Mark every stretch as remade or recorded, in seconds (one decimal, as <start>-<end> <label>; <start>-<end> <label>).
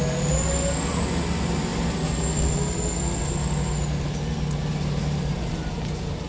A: 0.0-6.3 recorded